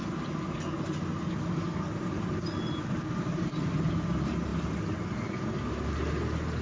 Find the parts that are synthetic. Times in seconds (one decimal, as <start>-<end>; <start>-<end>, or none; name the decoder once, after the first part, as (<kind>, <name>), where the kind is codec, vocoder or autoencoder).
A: none